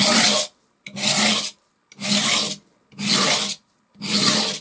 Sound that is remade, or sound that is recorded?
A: recorded